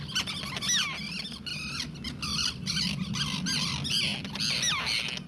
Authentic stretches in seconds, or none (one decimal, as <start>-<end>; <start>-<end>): 0.0-5.3